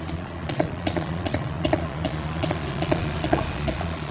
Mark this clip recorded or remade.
remade